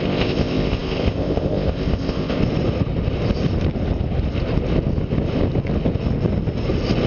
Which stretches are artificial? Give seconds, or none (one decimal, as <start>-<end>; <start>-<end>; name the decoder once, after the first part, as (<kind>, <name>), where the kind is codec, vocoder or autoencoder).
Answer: 0.0-2.4 (codec, ZipCodec)